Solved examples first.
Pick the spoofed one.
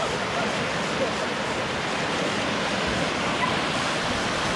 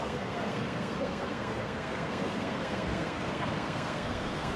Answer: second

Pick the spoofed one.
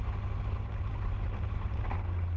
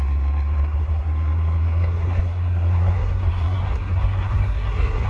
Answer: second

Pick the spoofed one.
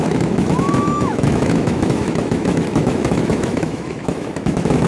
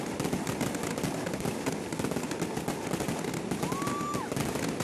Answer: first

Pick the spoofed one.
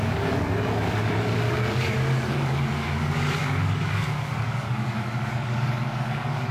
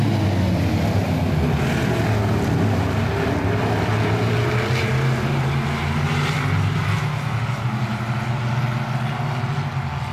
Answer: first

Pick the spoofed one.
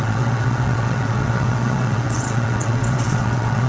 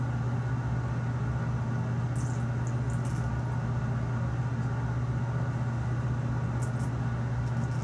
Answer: first